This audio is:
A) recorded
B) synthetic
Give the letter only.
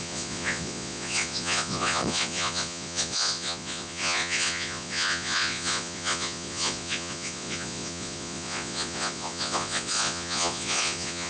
B